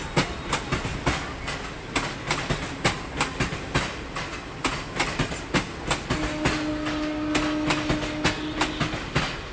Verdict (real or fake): real